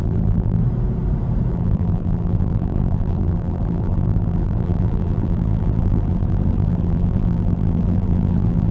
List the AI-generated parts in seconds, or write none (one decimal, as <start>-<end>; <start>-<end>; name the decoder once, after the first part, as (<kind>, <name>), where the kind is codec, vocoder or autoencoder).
0.0-0.6 (vocoder, BigVGAN v2); 1.5-8.7